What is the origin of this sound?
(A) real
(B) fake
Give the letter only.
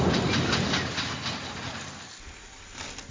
A